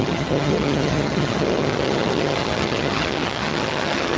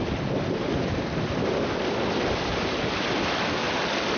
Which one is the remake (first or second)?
first